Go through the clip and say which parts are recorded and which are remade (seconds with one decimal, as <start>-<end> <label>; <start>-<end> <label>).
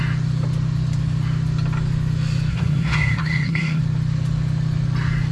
0.0-2.5 recorded; 2.5-3.8 remade; 3.8-5.3 recorded